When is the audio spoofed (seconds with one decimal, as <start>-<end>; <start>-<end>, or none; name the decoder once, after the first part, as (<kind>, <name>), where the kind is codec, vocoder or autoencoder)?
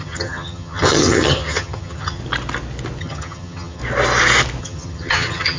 0.0-2.2 (vocoder, HiFi-GAN); 3.0-3.8; 4.6-5.6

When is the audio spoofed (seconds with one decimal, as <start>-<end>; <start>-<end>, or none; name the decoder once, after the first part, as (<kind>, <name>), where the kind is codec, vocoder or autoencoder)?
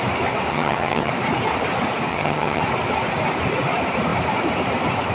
0.5-1.1 (vocoder, HiFi-GAN); 2.1-2.6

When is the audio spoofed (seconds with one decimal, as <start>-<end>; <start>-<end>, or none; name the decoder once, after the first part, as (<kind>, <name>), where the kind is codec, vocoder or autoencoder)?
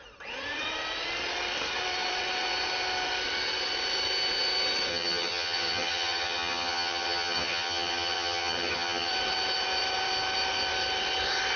4.9-9.1 (vocoder, HiFi-GAN)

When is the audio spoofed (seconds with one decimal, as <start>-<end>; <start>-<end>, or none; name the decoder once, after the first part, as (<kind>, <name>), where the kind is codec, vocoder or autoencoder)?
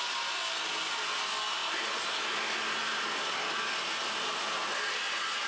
none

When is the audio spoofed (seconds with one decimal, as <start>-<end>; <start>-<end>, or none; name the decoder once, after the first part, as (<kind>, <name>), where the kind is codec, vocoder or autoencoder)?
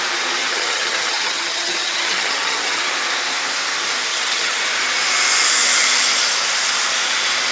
0.4-2.9 (vocoder, HiFi-GAN); 4.1-4.6